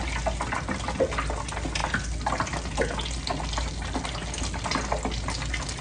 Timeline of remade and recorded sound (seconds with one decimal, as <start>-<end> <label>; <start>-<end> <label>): 0.0-5.8 recorded